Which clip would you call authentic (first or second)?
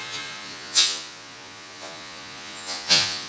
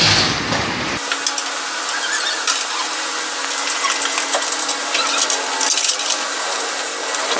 second